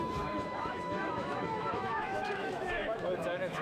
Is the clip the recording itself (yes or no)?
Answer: no